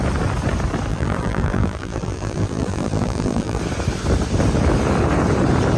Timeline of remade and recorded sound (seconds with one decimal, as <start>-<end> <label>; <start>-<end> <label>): 0.0-0.9 recorded; 0.9-3.6 remade; 3.6-5.8 recorded

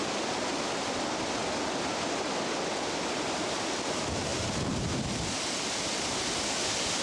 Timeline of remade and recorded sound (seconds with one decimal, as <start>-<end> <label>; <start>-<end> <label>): 0.0-7.0 recorded

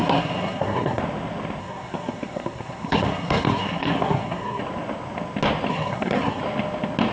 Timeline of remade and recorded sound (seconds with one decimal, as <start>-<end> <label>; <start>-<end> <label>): 0.0-1.0 remade; 1.0-1.6 recorded; 1.6-4.6 remade; 4.6-5.7 recorded; 5.7-6.4 remade; 6.4-7.1 recorded

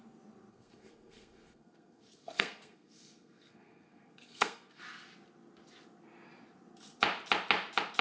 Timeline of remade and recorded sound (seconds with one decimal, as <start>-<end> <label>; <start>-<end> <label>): 0.0-0.5 recorded; 0.5-4.8 remade; 4.8-8.0 recorded

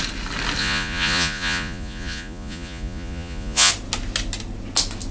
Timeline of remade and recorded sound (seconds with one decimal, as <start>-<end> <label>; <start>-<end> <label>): 0.0-0.6 recorded; 0.6-3.7 remade; 3.7-5.1 recorded

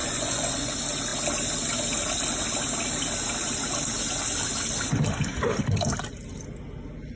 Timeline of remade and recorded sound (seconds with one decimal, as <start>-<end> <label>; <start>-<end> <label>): 0.0-0.7 remade; 0.7-7.2 recorded

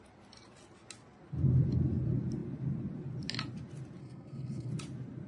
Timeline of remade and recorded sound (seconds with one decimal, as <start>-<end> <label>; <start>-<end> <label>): 0.0-4.0 recorded; 4.0-4.7 remade; 4.7-5.3 recorded

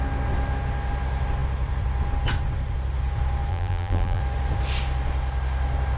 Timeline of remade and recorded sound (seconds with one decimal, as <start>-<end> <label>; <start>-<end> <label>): 0.0-3.5 recorded; 3.5-4.2 remade; 4.2-6.0 recorded